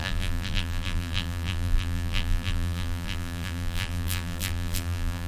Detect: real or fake fake